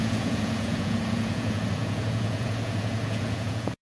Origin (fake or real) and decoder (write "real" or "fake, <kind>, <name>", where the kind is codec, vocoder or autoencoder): fake, vocoder, Vocos